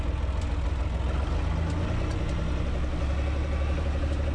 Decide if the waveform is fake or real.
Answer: real